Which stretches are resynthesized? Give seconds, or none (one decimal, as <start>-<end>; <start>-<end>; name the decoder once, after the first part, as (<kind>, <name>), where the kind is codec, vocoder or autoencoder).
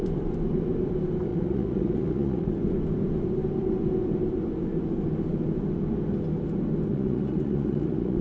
1.3-2.5 (vocoder, Vocos); 6.9-8.2